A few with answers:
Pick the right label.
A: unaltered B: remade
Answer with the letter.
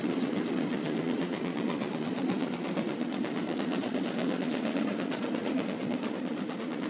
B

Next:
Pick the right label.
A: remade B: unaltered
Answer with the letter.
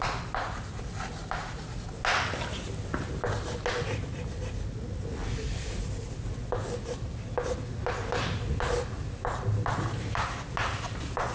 B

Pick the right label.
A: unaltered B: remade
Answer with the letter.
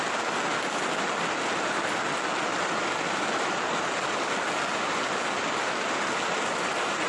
A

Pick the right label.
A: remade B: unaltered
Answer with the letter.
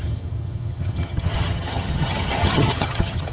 A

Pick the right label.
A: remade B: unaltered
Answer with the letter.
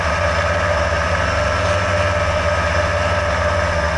B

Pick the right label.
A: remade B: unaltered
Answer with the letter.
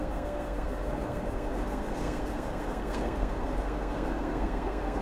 A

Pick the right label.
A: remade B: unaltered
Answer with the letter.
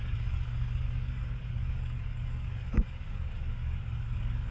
A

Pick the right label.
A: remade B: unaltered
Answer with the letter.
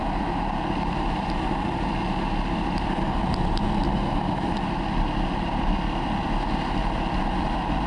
B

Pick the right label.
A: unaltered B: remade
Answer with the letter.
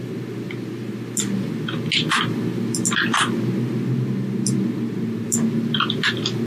A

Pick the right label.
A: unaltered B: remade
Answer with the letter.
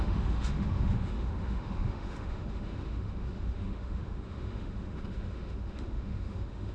B